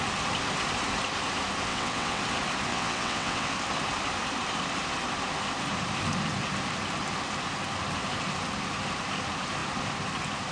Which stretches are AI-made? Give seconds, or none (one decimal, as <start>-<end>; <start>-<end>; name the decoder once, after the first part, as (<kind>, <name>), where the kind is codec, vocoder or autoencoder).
1.7-2.2 (vocoder, WaveNeXt); 2.7-3.5